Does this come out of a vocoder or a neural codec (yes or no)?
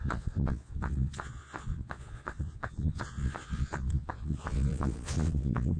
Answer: yes